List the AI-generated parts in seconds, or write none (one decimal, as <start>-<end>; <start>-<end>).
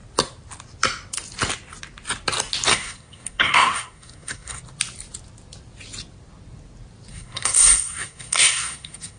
2.7-4.6; 7.1-9.2